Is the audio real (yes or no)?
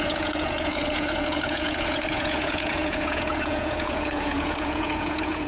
no